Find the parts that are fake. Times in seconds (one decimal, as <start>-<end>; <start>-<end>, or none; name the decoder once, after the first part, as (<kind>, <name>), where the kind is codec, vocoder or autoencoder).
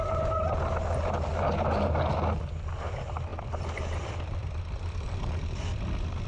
3.3-6.3 (vocoder, BigVGAN v2)